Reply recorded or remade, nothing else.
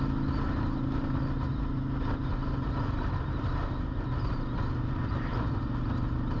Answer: recorded